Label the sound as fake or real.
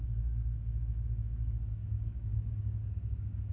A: fake